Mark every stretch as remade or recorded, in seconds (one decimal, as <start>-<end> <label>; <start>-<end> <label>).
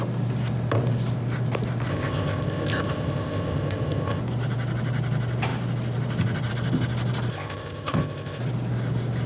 0.0-1.9 recorded; 1.9-4.2 remade; 4.2-7.3 recorded; 7.3-8.4 remade; 8.4-9.3 recorded